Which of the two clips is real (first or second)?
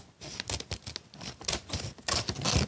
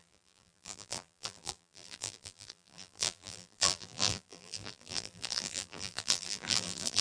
first